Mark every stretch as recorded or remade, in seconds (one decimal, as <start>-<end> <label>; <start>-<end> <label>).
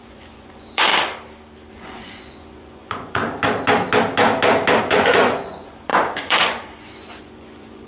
0.0-0.9 remade; 0.9-1.7 recorded; 1.7-3.2 remade; 3.2-4.8 recorded; 4.8-7.9 remade